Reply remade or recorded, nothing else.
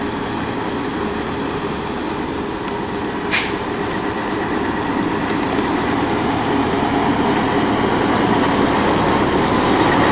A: recorded